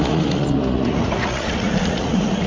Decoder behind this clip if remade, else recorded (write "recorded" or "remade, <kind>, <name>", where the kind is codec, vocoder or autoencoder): remade, vocoder, Vocos